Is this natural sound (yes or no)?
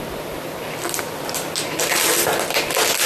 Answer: yes